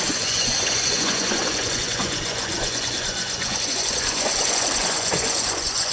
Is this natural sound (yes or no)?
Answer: no